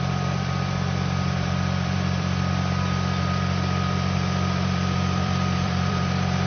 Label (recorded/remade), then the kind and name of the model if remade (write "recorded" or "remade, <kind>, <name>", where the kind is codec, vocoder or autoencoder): remade, vocoder, BigVGAN v2